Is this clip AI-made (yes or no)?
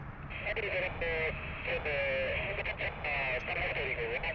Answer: no